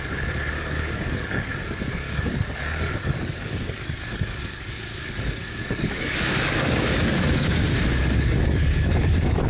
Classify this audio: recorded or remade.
remade